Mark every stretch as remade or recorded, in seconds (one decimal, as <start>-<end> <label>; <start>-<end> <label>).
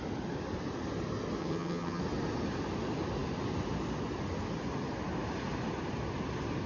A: 0.0-1.4 recorded; 1.4-2.0 remade; 2.0-6.7 recorded